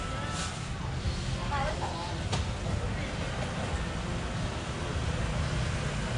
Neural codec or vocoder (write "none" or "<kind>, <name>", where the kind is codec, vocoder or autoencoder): none